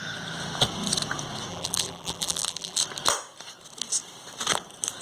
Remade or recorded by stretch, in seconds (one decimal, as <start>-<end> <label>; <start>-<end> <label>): 0.0-1.5 recorded; 1.5-2.8 remade; 2.8-5.0 recorded